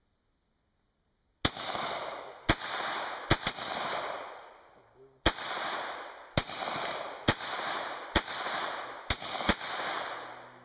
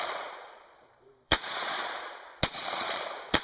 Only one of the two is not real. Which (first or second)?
second